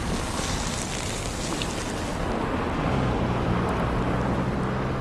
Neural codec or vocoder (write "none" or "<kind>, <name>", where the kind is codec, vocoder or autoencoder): none